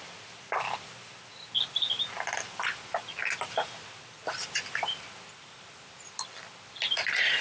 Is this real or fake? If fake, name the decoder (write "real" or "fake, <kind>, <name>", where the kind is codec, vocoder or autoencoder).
real